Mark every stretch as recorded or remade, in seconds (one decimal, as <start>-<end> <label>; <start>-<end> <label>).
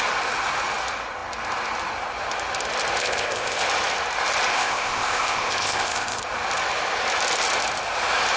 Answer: 0.0-3.0 recorded; 3.0-3.6 remade; 3.6-4.5 recorded; 4.5-6.2 remade; 6.2-8.4 recorded